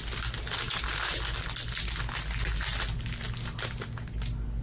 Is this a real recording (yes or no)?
yes